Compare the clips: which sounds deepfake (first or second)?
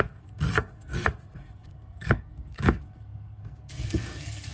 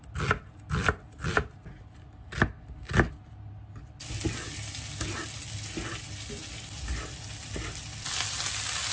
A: first